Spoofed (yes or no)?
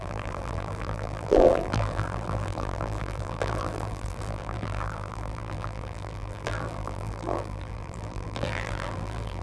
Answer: yes